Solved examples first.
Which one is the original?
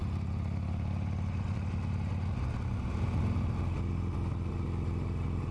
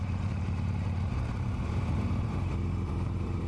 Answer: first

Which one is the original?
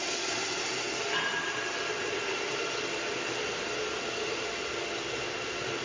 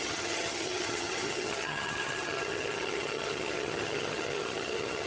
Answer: first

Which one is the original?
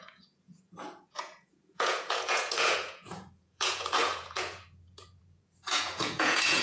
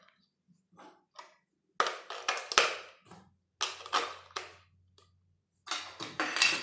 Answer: second